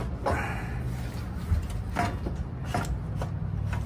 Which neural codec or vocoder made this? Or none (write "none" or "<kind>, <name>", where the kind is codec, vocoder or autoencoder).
none